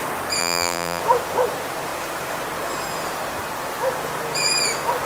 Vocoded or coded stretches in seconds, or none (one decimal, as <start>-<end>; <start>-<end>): 0.4-1.0